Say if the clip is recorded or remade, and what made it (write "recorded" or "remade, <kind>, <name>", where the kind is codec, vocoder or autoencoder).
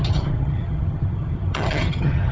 remade, vocoder, HiFi-GAN